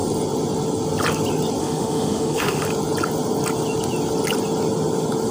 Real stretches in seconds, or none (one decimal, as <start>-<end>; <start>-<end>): 0.0-1.6; 2.6-5.3